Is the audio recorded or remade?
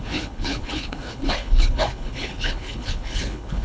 remade